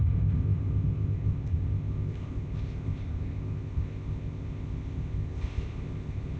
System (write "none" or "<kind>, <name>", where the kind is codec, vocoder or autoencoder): codec, ZipCodec